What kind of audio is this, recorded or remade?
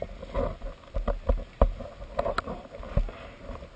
recorded